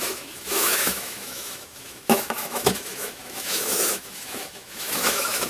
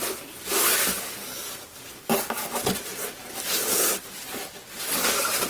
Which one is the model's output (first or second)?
first